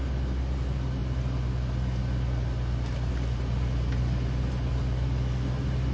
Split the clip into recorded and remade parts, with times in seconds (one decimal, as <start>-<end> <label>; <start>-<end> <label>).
0.0-5.9 recorded